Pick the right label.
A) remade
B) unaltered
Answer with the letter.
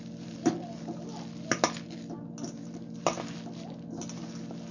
B